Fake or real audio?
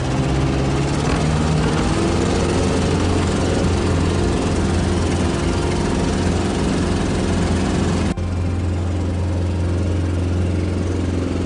real